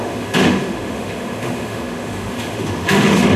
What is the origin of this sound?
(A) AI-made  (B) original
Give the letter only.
A